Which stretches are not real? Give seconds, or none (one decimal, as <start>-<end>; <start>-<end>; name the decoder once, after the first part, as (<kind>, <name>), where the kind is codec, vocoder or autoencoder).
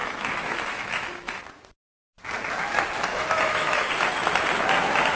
0.0-1.4 (autoencoder, DAC-VAE); 3.1-3.9